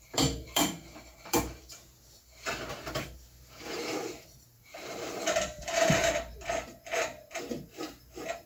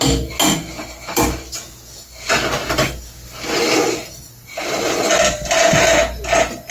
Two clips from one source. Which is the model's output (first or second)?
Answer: first